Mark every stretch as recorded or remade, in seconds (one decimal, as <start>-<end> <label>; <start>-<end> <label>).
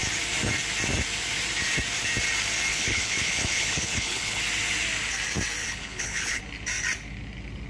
0.0-2.7 recorded; 2.7-4.4 remade; 4.4-5.6 recorded; 5.6-6.4 remade; 6.4-7.7 recorded